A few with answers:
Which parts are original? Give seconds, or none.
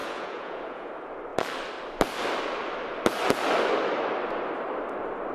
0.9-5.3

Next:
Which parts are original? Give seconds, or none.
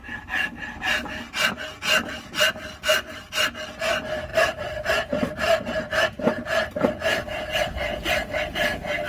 0.0-4.3; 6.9-8.2; 8.7-9.1